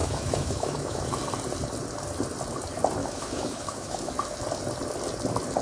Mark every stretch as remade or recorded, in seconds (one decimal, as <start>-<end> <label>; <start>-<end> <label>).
0.0-1.0 remade; 1.0-3.0 recorded; 3.0-4.1 remade; 4.1-5.6 recorded